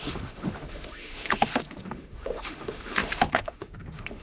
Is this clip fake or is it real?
fake